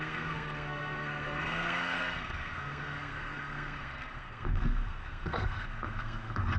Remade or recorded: remade